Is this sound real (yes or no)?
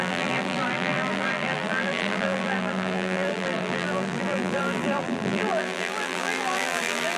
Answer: no